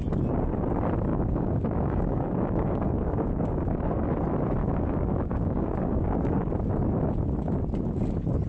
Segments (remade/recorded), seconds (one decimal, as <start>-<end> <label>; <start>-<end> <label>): 0.0-1.1 recorded; 1.1-4.1 remade; 4.1-4.6 recorded; 4.6-6.5 remade; 6.5-8.5 recorded